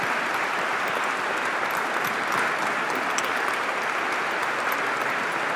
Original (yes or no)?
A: yes